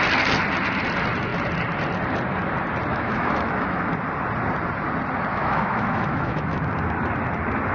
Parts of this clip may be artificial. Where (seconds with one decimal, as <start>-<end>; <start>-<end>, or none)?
2.9-3.9; 5.3-6.6